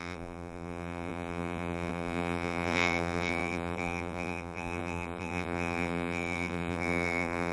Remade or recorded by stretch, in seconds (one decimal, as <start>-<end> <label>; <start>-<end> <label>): 0.0-7.5 remade